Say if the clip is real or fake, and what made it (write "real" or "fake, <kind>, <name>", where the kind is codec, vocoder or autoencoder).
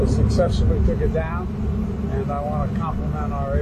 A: real